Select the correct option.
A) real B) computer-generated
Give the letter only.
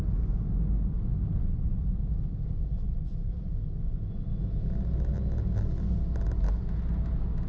A